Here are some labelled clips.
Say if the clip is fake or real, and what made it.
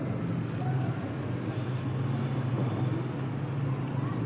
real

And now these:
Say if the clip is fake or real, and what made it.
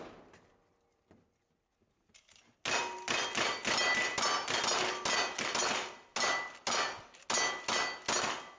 real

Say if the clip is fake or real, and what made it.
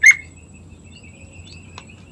real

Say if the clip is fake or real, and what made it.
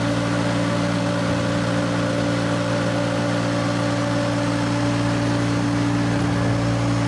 real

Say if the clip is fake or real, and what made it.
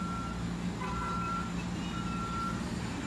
real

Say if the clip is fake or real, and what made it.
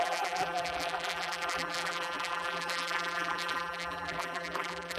fake, vocoder, BigVGAN v2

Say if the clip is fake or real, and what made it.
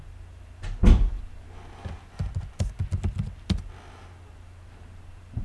real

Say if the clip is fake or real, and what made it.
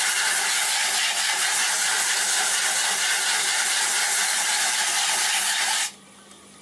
real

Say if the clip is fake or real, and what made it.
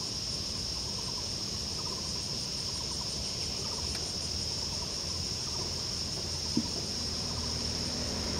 fake, vocoder, BigVGAN v2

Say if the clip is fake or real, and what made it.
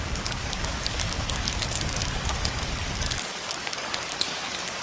fake, codec, DAC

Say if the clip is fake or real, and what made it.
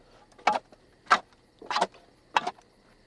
real